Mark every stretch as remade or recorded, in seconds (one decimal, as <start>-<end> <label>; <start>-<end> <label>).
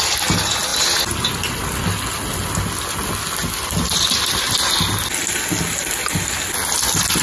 0.0-7.2 recorded